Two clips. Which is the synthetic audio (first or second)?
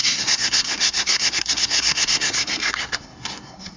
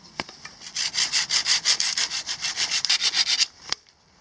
first